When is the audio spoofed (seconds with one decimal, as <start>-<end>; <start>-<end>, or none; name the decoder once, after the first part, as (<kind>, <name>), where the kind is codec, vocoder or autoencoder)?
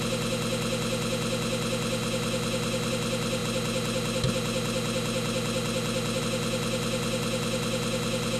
none